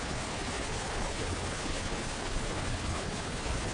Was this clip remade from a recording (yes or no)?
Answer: yes